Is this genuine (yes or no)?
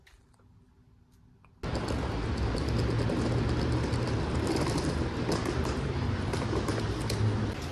yes